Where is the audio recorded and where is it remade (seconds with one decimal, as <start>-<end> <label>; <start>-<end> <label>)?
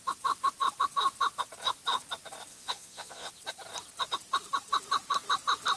0.0-2.5 recorded; 2.5-3.3 remade; 3.3-5.8 recorded